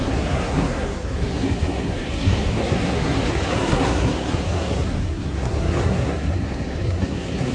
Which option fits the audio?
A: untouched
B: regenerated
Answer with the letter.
B